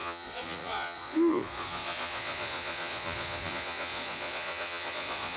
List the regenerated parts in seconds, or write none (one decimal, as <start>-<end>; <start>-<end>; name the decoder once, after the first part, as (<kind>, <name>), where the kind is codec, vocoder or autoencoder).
0.0-5.4 (vocoder, Vocos)

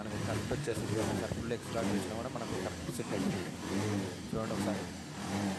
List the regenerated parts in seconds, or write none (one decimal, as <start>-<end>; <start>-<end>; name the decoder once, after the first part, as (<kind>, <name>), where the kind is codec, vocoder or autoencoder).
0.6-1.2 (codec, SNAC); 2.8-3.6

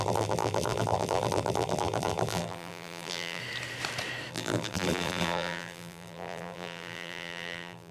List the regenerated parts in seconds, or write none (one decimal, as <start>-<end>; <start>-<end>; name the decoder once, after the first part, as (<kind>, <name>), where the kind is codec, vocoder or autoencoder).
0.0-3.4 (vocoder, BigVGAN v2); 4.3-7.9

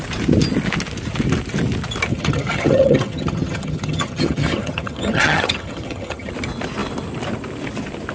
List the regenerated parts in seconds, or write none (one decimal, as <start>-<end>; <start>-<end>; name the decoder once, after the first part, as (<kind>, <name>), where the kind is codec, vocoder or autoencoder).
2.1-6.3 (vocoder, HiFi-GAN)

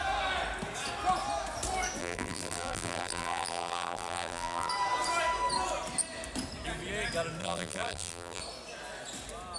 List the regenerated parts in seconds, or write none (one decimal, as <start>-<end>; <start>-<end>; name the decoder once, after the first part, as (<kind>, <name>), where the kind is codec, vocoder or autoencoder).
2.0-4.7 (vocoder, BigVGAN v2); 7.4-8.4

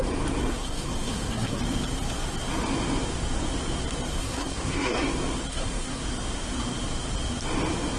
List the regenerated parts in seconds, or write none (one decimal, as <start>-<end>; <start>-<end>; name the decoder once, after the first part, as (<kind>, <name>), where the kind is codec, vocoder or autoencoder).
0.4-1.6 (codec, SNAC); 4.2-5.1; 5.5-6.0